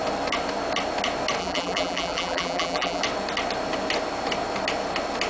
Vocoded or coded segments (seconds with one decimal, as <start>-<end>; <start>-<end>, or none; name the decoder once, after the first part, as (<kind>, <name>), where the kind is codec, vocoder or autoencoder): 1.4-3.0 (vocoder, BigVGAN v2)